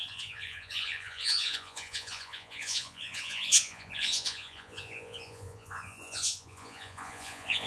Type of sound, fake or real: fake